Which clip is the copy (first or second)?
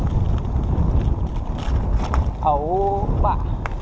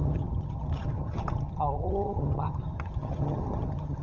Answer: second